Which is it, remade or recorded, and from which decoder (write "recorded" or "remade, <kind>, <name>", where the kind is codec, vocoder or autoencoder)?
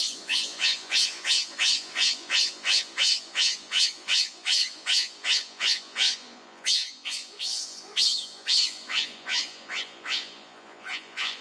remade, vocoder, Vocos